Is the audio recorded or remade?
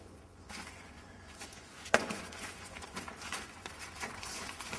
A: remade